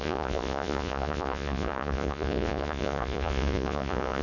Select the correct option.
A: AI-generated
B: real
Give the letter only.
A